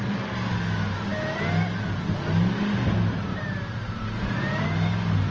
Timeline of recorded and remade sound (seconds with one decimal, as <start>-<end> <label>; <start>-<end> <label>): 0.0-3.3 recorded; 3.3-4.6 remade; 4.6-5.3 recorded